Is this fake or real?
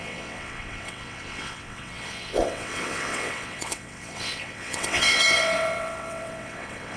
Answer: fake